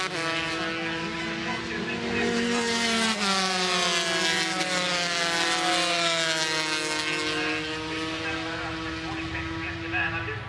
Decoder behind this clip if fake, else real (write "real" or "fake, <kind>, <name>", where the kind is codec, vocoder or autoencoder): real